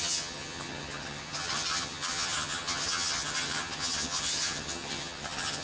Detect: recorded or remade remade